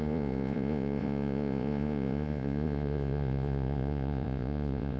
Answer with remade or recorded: remade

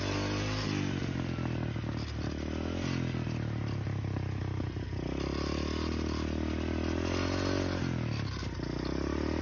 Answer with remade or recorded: recorded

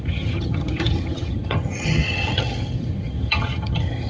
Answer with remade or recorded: remade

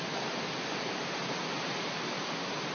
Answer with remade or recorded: recorded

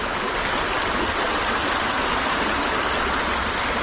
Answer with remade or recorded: recorded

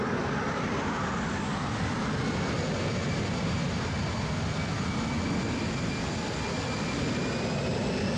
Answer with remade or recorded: recorded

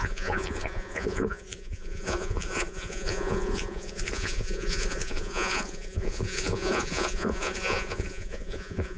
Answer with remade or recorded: remade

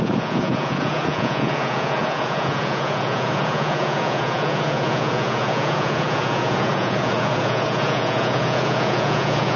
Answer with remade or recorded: remade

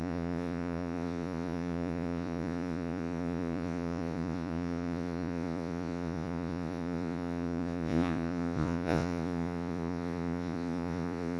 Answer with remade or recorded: remade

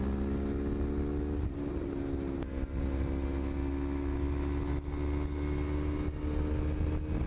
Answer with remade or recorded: recorded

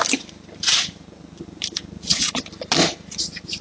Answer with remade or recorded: recorded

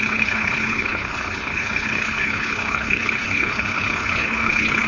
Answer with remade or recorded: remade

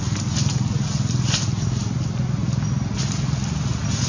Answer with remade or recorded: recorded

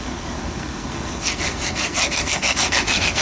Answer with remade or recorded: remade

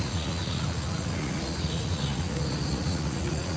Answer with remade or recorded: remade